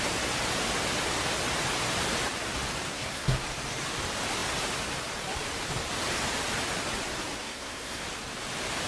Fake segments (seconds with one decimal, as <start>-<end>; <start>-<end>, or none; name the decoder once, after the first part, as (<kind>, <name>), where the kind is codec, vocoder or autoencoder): 2.9-3.4 (codec, SNAC); 7.4-8.0